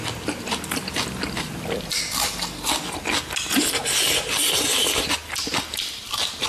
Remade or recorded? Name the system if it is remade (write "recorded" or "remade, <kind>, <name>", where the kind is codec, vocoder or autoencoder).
recorded